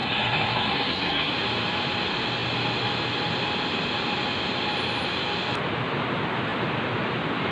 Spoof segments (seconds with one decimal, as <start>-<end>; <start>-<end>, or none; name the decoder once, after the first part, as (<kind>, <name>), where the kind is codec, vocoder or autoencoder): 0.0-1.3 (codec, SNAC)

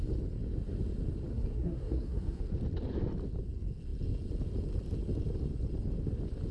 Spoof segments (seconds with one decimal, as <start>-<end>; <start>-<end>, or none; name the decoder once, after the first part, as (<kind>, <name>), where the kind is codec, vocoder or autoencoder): 1.3-2.4 (codec, SNAC)

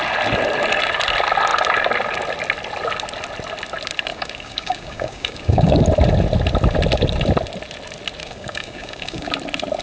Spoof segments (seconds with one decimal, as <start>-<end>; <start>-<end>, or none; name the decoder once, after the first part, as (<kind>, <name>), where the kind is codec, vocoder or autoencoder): 4.1-5.8 (codec, DAC); 8.2-9.3

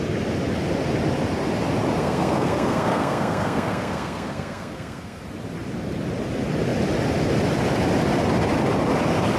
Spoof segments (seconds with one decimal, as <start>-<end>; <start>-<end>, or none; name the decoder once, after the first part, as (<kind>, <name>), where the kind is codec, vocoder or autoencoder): 2.0-5.2 (codec, SNAC)

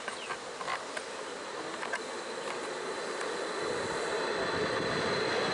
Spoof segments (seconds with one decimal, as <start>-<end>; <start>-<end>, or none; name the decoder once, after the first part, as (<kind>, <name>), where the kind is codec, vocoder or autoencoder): 0.7-4.0 (vocoder, BigVGAN v2)

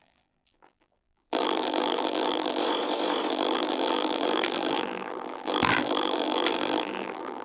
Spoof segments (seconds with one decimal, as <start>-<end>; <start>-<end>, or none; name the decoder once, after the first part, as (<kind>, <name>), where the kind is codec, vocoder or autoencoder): 0.0-2.6 (vocoder, BigVGAN v2); 3.3-7.4

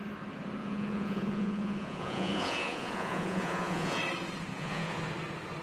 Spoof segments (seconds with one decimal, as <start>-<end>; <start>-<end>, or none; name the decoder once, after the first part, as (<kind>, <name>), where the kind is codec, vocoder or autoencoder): 0.6-4.0 (vocoder, Vocos); 4.5-5.0

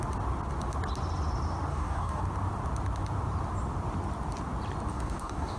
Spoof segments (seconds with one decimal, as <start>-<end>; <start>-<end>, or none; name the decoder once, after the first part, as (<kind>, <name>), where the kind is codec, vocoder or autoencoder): 1.7-2.2 (codec, DAC); 4.9-5.6